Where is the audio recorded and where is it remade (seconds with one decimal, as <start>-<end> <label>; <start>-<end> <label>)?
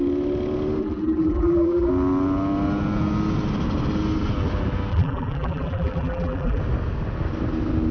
0.0-0.8 recorded; 0.8-1.9 remade; 1.9-4.9 recorded; 4.9-6.6 remade; 6.6-7.9 recorded